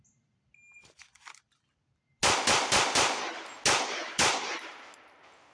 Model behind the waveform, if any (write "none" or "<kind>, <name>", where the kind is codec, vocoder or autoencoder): none